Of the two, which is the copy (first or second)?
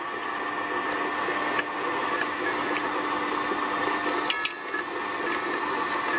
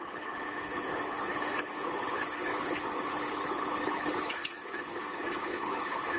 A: second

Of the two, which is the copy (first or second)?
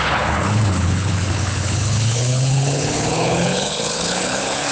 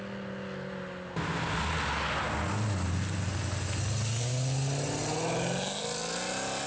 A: first